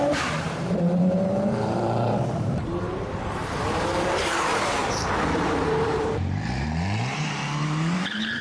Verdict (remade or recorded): remade